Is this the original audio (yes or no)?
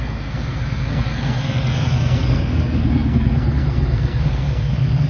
no